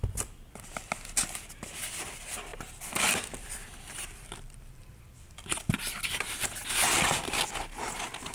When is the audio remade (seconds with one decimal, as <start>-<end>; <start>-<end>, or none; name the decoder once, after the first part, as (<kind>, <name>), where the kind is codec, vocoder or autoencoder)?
2.5-6.7 (vocoder, BigVGAN v2)